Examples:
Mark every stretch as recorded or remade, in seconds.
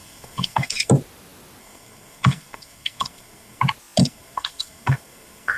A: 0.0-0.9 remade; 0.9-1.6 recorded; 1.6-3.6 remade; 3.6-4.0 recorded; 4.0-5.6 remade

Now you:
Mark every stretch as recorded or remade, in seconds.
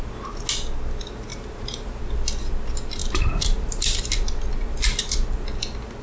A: 0.0-1.3 recorded; 1.3-2.0 remade; 2.0-3.0 recorded; 3.0-4.0 remade; 4.0-6.0 recorded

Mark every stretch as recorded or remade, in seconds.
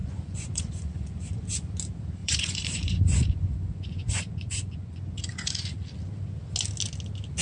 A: 0.0-1.4 remade; 1.4-2.2 recorded; 2.2-5.7 remade; 5.7-7.4 recorded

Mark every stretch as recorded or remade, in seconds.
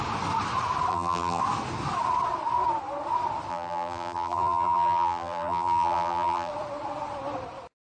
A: 0.0-0.9 recorded; 0.9-1.4 remade; 1.4-3.5 recorded; 3.5-6.5 remade; 6.5-7.9 recorded